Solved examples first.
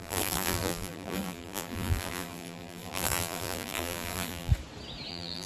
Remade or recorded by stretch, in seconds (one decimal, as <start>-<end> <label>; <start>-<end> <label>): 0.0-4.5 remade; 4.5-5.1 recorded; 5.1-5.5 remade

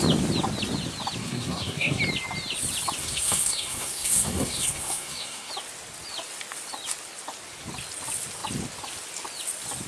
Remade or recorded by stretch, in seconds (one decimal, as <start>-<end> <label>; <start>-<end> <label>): 0.0-1.2 recorded; 1.2-2.0 remade; 2.0-3.0 recorded; 3.0-5.5 remade; 5.5-9.9 recorded

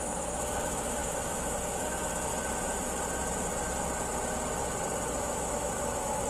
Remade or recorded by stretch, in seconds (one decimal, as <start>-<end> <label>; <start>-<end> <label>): 0.0-2.3 remade; 2.3-5.2 recorded; 5.2-6.3 remade

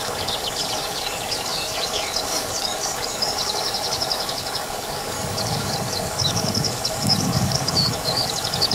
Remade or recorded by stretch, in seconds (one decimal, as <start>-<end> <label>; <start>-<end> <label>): 0.0-8.7 remade